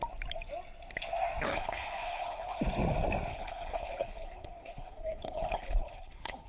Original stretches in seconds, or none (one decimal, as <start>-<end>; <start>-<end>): 0.0-1.5; 2.6-3.3